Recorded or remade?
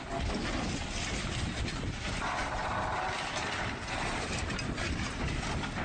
recorded